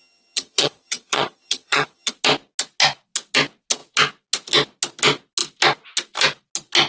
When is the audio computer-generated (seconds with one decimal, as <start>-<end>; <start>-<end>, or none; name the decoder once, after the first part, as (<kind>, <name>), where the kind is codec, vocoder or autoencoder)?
0.0-2.1 (vocoder, HiFi-GAN)